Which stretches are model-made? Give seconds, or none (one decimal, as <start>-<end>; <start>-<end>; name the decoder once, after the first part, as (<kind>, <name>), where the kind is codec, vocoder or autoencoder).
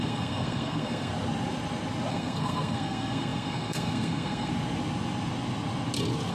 0.0-1.1 (codec, SNAC); 2.1-4.5